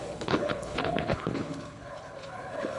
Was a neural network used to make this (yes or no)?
yes